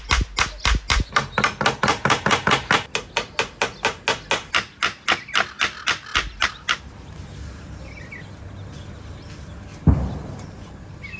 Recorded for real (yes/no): yes